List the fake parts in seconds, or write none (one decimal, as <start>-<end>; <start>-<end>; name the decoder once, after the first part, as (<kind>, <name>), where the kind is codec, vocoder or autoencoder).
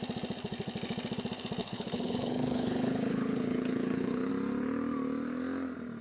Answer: 1.6-4.3 (codec, HILCodec)